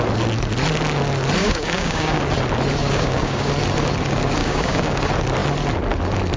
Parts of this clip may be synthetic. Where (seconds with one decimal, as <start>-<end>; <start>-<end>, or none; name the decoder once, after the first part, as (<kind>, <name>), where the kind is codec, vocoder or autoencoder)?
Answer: 1.4-2.2 (codec, DAC); 2.8-3.5; 4.4-5.0